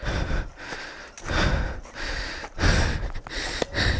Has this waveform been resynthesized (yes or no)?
no